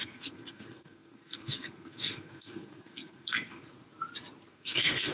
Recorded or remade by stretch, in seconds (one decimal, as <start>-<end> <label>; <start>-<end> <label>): 0.0-3.7 remade; 3.7-4.5 recorded; 4.5-5.1 remade